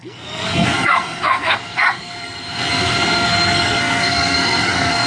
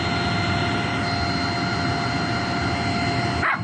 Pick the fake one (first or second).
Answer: first